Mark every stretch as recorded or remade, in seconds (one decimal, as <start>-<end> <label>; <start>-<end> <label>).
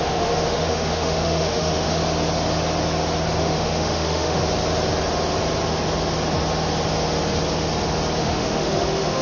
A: 0.0-2.0 remade; 2.0-3.4 recorded; 3.4-4.4 remade; 4.4-8.2 recorded; 8.2-9.2 remade